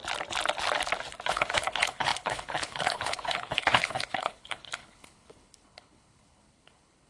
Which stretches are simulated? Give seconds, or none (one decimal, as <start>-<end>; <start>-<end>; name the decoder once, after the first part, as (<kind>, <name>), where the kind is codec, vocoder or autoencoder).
1.3-7.1 (codec, HILCodec)